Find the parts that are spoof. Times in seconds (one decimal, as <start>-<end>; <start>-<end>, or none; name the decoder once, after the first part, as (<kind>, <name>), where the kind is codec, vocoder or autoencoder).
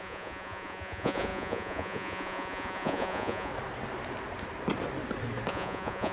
0.0-3.5 (vocoder, Vocos); 5.5-6.1